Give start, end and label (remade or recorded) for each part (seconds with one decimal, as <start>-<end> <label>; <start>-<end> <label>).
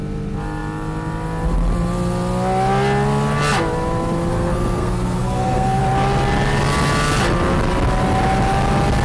0.0-4.3 recorded; 4.3-5.8 remade; 5.8-9.0 recorded